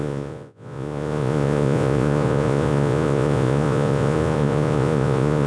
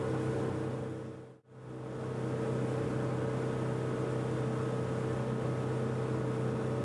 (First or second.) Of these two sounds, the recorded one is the second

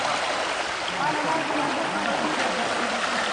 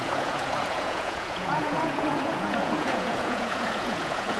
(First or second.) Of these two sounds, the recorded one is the first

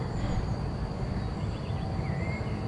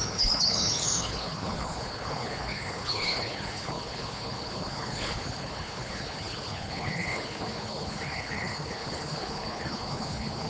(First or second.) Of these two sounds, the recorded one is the first